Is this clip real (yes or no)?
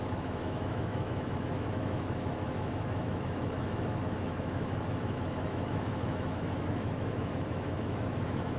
no